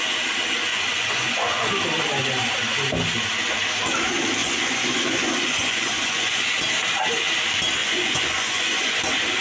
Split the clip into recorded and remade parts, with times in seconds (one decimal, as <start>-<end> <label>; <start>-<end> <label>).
0.0-0.7 recorded; 0.7-1.7 remade; 1.7-4.4 recorded; 4.4-6.5 remade; 6.5-7.8 recorded; 7.8-9.0 remade; 9.0-9.4 recorded